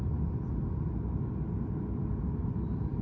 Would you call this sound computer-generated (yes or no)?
no